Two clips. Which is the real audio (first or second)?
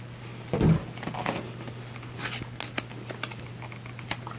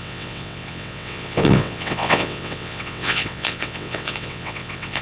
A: first